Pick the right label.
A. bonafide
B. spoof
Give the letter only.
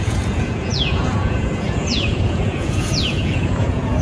B